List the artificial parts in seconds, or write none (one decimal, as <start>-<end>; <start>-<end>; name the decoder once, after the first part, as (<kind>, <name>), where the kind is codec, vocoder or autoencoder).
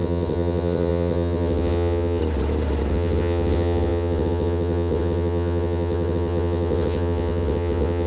0.0-2.2 (vocoder, WaveNeXt); 2.9-8.1